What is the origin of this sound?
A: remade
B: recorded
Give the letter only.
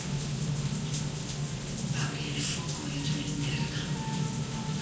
B